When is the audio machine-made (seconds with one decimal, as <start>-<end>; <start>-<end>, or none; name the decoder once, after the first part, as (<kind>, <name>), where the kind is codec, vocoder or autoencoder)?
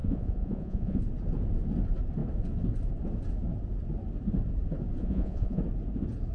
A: 0.0-1.0 (vocoder, Vocos); 5.0-5.6